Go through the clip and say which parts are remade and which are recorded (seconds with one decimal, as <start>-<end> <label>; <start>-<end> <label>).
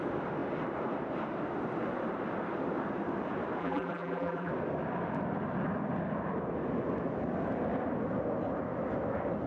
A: 0.0-3.6 recorded; 3.6-4.5 remade; 4.5-9.5 recorded